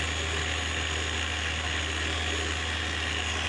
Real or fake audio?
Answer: real